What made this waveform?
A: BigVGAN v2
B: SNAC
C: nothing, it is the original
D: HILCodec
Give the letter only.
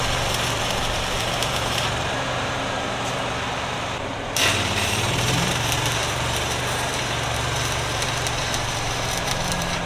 A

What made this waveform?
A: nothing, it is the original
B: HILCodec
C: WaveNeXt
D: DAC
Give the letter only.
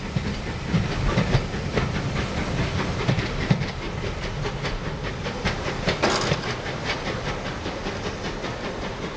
A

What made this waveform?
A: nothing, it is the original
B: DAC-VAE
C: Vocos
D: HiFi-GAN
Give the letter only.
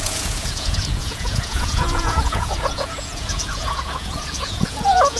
C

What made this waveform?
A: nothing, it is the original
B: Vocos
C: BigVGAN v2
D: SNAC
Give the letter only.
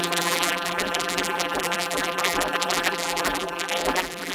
C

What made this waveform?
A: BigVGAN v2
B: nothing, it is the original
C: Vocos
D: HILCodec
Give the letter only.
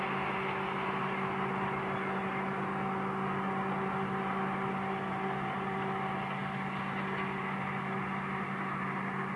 B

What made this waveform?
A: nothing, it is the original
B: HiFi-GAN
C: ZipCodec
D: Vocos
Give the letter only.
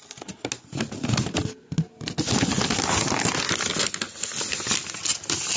A